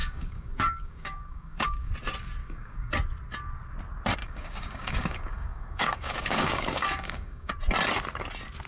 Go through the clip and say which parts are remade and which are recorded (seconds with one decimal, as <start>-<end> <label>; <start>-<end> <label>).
0.0-1.9 remade; 1.9-2.4 recorded; 2.4-2.9 remade; 2.9-4.2 recorded; 4.2-7.5 remade; 7.5-8.7 recorded